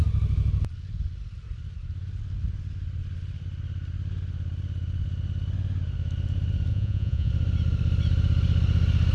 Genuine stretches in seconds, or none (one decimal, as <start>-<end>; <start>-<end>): 0.0-6.7; 7.3-9.1